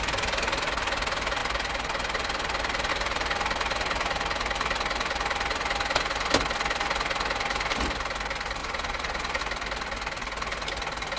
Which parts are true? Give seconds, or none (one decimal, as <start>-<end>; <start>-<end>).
0.0-8.6; 9.4-11.2